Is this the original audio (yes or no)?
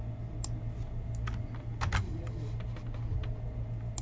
yes